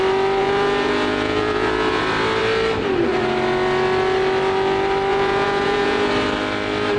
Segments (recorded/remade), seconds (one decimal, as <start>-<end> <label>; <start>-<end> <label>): 0.0-0.4 recorded; 0.4-2.0 remade; 2.0-5.1 recorded; 5.1-6.1 remade; 6.1-7.0 recorded